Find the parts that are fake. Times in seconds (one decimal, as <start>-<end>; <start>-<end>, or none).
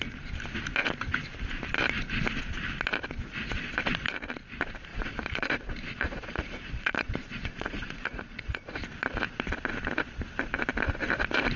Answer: 4.9-8.8